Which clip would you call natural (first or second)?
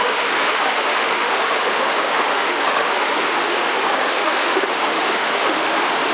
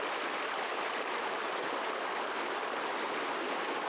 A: second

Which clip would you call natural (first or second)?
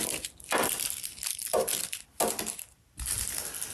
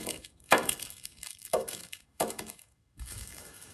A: first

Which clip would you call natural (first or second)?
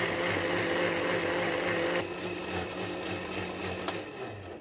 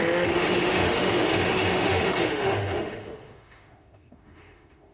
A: first